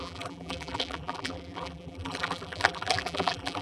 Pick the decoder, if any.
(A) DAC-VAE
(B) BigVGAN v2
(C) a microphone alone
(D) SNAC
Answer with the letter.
B